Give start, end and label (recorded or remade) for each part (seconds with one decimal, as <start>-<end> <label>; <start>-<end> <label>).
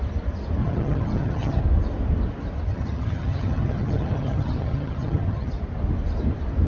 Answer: 0.0-0.6 recorded; 0.6-1.6 remade; 1.6-2.7 recorded; 2.7-5.5 remade; 5.5-6.7 recorded